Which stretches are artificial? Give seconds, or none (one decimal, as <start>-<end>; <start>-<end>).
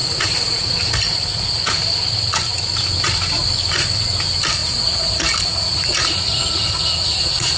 0.0-0.9; 1.3-1.8; 4.6-7.6